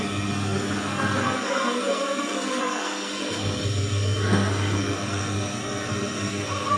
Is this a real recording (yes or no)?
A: no